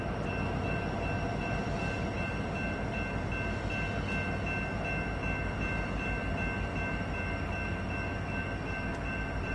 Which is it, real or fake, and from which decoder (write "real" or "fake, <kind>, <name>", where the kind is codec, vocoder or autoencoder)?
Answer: real